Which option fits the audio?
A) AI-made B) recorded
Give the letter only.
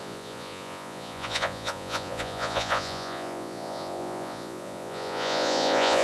A